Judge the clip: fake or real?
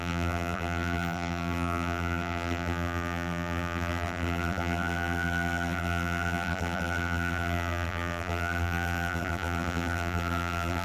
fake